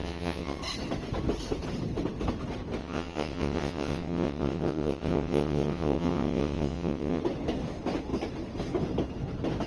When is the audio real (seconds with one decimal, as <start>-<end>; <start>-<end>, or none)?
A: 0.6-2.8; 7.2-9.7